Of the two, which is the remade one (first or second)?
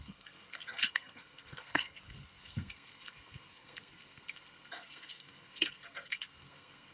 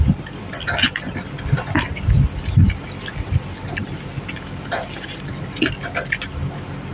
first